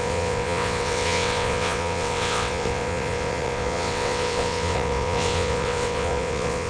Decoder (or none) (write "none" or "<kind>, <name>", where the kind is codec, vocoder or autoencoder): vocoder, WaveNeXt